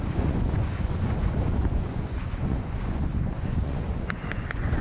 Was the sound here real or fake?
fake